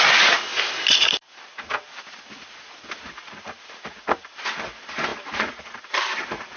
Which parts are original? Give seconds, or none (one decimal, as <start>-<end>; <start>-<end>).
0.5-3.1